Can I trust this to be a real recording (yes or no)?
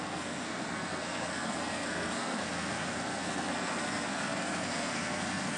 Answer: no